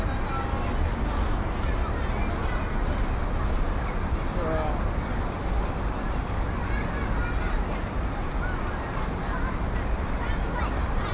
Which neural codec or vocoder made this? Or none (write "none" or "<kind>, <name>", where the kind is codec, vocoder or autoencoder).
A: none